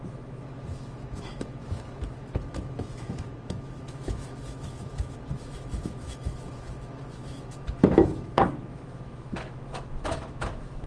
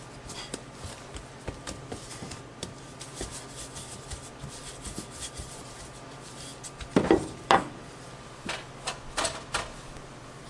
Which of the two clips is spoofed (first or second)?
first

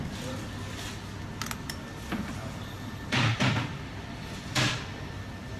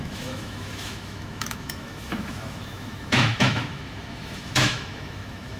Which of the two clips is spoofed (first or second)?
second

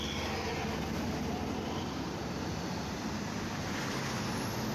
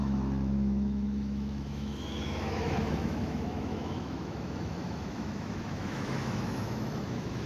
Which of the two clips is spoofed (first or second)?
second